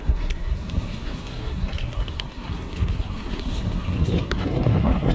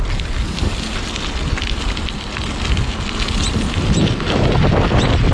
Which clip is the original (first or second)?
second